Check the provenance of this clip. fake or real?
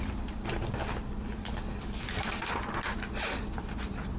fake